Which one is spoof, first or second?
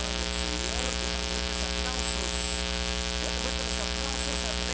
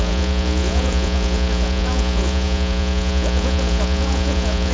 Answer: second